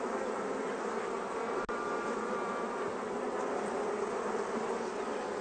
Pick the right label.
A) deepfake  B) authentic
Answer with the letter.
B